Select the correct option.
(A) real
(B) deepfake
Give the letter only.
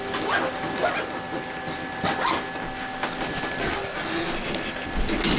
A